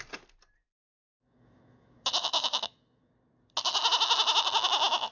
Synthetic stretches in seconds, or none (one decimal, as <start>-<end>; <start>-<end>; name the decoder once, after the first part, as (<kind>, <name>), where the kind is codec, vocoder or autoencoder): 0.7-3.1 (autoencoder, DAC-VAE)

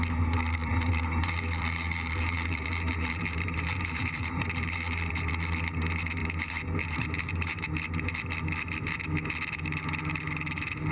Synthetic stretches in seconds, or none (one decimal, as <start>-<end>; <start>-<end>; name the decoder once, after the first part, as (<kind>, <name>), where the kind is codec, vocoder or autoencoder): 0.6-5.3 (vocoder, BigVGAN v2); 6.2-7.7